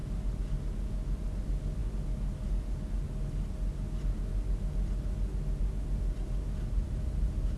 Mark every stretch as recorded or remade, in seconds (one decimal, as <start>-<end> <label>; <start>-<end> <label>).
0.0-7.6 recorded

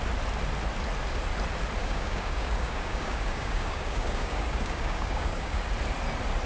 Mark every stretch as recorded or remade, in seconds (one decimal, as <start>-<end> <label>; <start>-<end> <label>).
0.0-1.8 recorded; 1.8-5.7 remade; 5.7-6.5 recorded

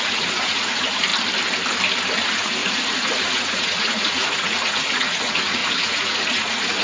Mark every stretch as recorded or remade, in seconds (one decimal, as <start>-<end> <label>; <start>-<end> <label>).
0.0-1.1 remade; 1.1-2.2 recorded; 2.2-6.8 remade

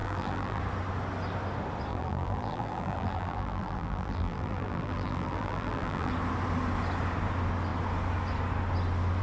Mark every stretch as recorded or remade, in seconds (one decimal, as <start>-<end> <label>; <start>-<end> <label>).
0.0-0.6 remade; 0.6-1.9 recorded; 1.9-6.1 remade; 6.1-9.2 recorded

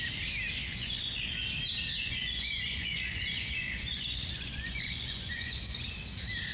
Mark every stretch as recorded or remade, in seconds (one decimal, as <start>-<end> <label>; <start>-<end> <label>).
0.0-0.7 recorded; 0.7-1.4 remade; 1.4-2.0 recorded; 2.0-5.9 remade; 5.9-6.5 recorded

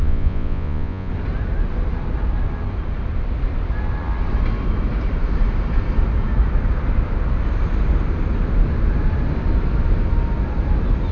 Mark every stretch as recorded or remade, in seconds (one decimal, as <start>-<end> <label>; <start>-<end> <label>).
0.0-1.1 remade; 1.1-11.1 recorded

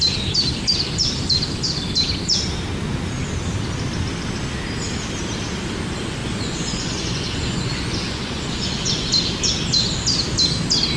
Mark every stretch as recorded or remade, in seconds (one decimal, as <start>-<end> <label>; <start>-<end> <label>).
0.0-6.2 recorded; 6.2-9.1 remade; 9.1-11.0 recorded

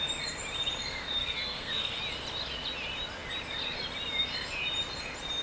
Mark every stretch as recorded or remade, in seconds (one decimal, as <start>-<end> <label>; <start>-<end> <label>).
0.0-1.2 recorded; 1.2-2.0 remade; 2.0-5.4 recorded